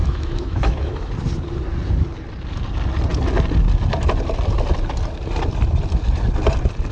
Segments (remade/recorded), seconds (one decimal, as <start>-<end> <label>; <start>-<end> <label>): 0.0-1.1 remade; 1.1-6.9 recorded